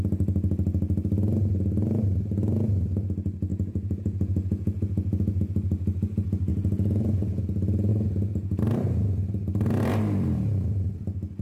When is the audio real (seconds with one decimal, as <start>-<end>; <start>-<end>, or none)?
0.0-3.5; 5.4-6.5; 7.4-7.9; 8.6-11.4